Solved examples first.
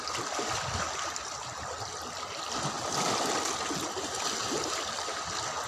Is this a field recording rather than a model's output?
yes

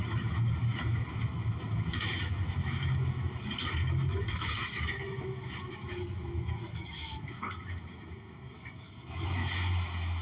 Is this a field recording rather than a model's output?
no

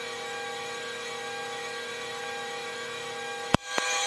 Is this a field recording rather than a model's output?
no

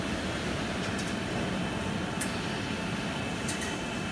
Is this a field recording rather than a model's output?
yes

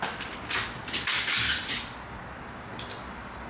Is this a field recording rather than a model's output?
yes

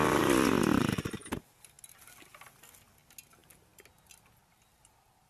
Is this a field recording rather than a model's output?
yes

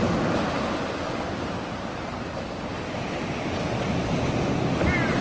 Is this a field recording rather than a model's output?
yes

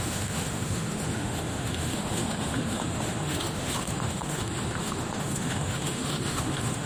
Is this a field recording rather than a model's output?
no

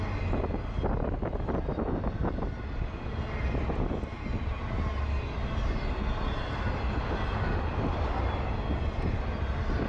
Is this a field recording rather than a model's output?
yes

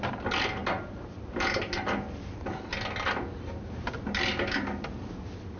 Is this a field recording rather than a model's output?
yes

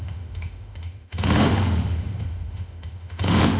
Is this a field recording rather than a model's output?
no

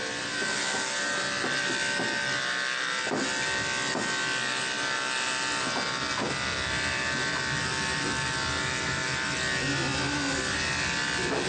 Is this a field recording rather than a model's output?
yes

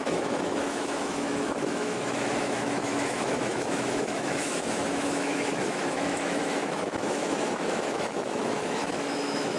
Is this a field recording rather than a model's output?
no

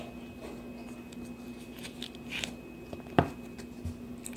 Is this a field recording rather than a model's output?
yes